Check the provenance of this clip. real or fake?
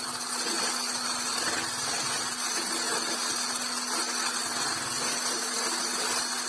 real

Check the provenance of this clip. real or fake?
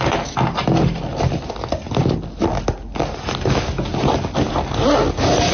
real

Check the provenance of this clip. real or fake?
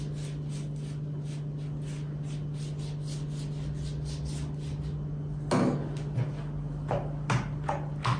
real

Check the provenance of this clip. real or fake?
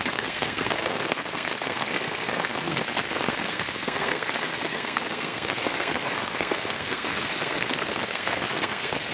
fake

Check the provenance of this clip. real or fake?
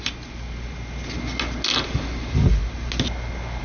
real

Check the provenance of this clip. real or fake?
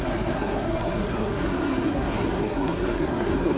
fake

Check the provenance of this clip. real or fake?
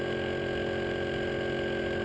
real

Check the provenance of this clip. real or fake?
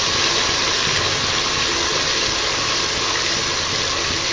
real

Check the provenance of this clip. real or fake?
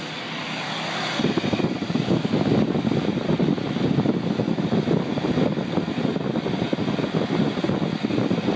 real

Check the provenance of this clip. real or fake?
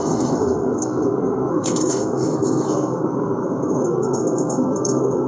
fake